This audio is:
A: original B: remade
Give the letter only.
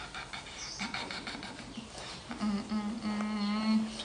A